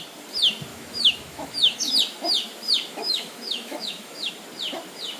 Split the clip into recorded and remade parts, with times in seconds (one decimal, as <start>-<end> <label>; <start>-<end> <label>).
0.0-0.7 recorded; 0.7-1.9 remade; 1.9-2.9 recorded; 2.9-4.3 remade; 4.3-5.2 recorded